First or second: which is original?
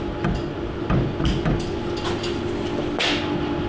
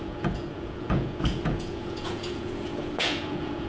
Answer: first